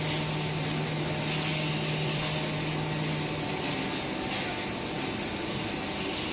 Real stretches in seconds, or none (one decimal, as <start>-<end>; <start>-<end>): 0.0-6.3